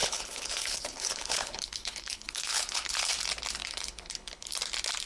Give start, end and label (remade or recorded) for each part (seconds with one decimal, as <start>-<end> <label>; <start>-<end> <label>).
0.0-3.1 remade; 3.1-3.6 recorded; 3.6-4.5 remade; 4.5-5.1 recorded